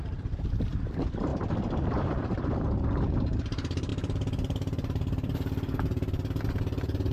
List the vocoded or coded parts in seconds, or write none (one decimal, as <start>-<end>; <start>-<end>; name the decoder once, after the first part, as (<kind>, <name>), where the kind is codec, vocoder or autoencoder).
0.0-7.1 (vocoder, BigVGAN v2)